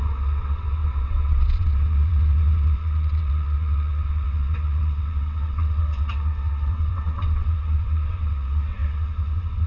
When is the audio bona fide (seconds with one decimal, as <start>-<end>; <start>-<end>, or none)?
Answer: none